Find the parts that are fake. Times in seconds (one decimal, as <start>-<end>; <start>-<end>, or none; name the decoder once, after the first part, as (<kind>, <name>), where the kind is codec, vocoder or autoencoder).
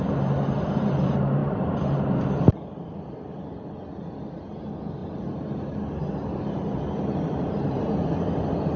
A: 1.4-3.5 (vocoder, BigVGAN v2); 5.0-7.9